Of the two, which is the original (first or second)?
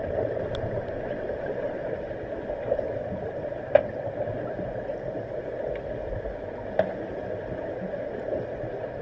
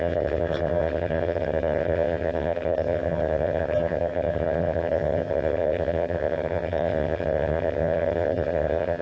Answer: first